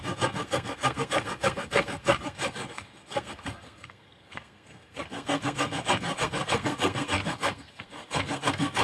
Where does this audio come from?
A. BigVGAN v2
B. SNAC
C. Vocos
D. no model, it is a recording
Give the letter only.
B